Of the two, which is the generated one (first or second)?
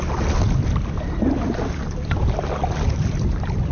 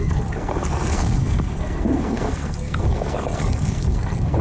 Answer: second